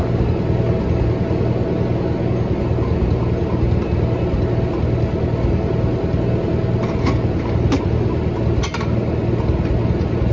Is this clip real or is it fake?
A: real